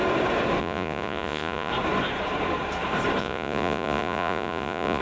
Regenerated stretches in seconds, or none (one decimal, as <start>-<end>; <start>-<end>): 0.6-1.7; 3.2-5.0